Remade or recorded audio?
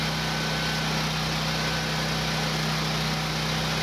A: recorded